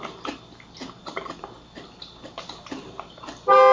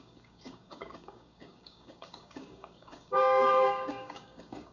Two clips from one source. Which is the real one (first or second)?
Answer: first